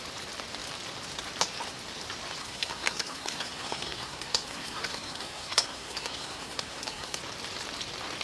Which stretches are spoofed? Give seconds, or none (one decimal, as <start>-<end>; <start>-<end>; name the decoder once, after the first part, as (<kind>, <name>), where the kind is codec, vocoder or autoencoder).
2.4-7.2 (codec, SNAC)